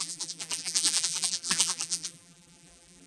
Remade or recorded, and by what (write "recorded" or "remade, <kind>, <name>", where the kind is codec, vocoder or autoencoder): remade, vocoder, BigVGAN v2